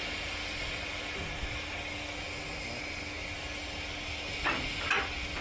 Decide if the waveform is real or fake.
real